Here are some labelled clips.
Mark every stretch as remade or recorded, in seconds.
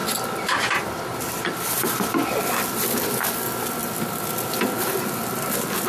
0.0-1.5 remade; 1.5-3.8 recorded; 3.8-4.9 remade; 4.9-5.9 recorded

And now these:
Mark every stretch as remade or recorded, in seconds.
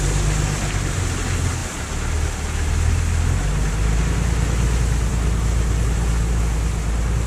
0.0-7.3 recorded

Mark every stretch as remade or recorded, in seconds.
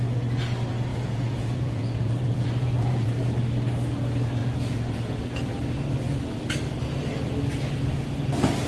0.0-0.9 recorded; 0.9-3.1 remade; 3.1-4.4 recorded; 4.4-5.5 remade; 5.5-8.7 recorded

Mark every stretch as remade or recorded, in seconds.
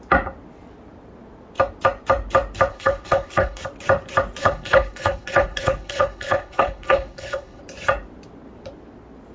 0.0-2.7 recorded; 2.7-3.6 remade; 3.6-4.4 recorded; 4.4-7.6 remade; 7.6-9.3 recorded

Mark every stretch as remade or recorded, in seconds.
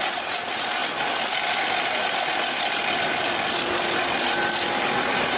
0.0-5.4 recorded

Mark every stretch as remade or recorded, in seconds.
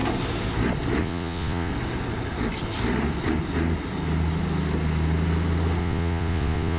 0.0-1.0 recorded; 1.0-1.7 remade; 1.7-5.8 recorded; 5.8-6.8 remade